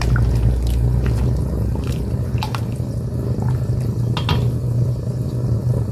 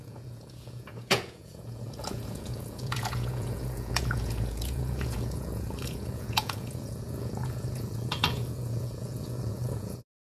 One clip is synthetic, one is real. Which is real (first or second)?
first